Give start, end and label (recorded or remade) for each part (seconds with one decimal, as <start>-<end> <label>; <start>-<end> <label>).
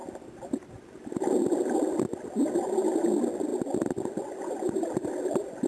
0.0-5.7 recorded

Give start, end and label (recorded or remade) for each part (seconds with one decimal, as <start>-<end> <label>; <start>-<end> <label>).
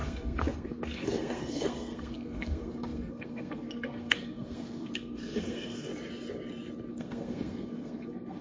0.0-5.9 remade; 5.9-6.9 recorded; 6.9-8.4 remade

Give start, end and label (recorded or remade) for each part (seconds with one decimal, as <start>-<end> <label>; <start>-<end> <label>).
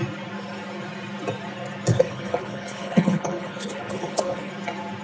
0.0-1.9 recorded; 1.9-4.5 remade; 4.5-5.0 recorded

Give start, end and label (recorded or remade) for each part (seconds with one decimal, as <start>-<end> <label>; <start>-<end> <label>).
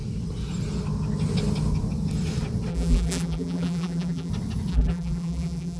0.0-2.7 recorded; 2.7-4.3 remade; 4.3-4.7 recorded; 4.7-5.8 remade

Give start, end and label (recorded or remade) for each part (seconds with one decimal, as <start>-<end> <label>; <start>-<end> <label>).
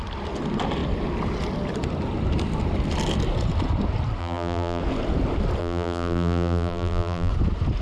0.0-4.2 recorded; 4.2-4.8 remade; 4.8-5.6 recorded; 5.6-7.3 remade; 7.3-7.8 recorded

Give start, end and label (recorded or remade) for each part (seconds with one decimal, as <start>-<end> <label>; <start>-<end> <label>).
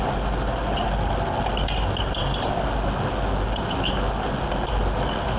0.0-5.4 recorded